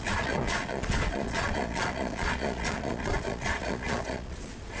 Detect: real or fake fake